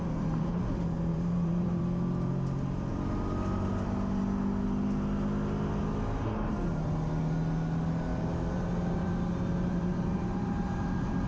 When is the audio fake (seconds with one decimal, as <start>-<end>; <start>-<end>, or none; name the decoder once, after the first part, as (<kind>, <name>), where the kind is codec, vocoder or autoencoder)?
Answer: 1.1-1.8 (vocoder, BigVGAN v2); 8.1-10.8